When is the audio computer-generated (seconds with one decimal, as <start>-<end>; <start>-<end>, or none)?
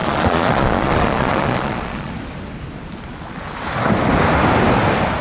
0.0-2.1